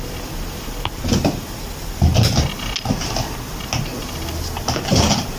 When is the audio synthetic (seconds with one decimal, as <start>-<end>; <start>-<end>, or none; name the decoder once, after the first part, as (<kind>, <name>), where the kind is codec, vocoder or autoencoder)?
none